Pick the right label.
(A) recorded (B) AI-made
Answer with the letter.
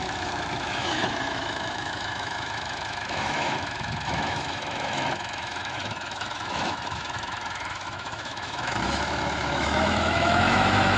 B